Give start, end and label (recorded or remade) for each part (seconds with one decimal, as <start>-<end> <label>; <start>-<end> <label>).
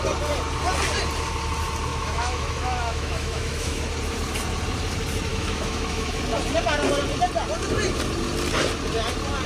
0.0-1.9 recorded; 1.9-3.8 remade; 3.8-5.3 recorded; 5.3-6.2 remade; 6.2-9.5 recorded